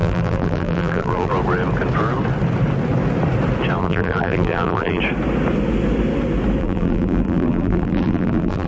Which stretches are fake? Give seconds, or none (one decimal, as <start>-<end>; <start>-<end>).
0.0-1.3; 3.8-5.0; 6.6-8.7